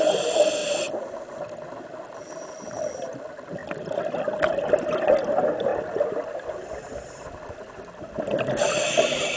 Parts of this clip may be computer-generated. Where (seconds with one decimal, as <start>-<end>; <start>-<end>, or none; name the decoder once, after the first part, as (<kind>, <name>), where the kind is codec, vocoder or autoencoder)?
none